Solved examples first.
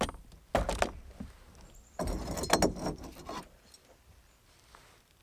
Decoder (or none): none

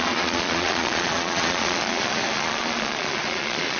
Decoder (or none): vocoder, Vocos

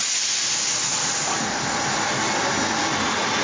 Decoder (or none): none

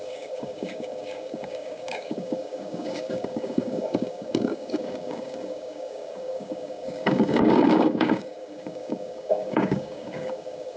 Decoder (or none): codec, DAC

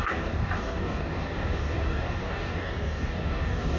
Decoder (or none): codec, DAC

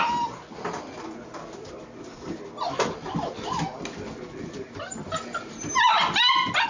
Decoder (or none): none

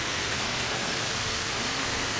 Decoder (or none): codec, SNAC